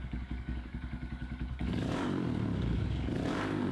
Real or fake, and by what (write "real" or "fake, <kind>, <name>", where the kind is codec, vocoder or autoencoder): fake, codec, DAC